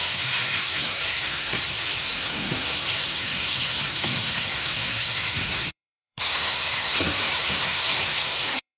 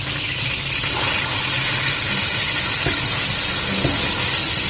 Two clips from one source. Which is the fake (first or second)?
first